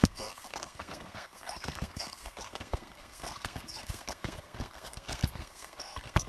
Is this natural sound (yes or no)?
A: no